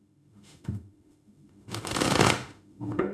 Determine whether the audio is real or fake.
fake